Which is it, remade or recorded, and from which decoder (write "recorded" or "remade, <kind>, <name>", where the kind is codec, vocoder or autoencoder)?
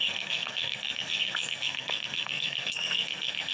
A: remade, codec, SNAC